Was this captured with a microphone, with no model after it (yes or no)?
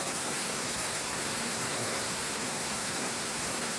no